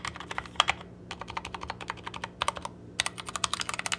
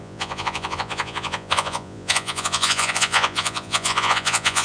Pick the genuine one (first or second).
first